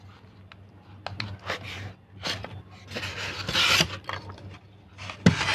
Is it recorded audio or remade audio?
recorded